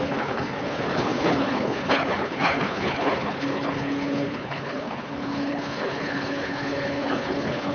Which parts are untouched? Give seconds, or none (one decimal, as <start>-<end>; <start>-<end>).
none